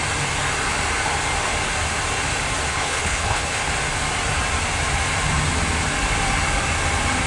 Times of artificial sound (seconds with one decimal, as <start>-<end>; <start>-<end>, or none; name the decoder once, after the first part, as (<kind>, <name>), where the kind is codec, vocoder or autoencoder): 2.7-3.7 (codec, HILCodec)